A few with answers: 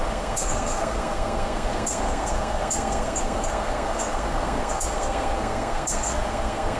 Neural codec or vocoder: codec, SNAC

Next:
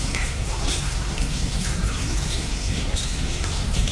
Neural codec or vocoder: codec, SNAC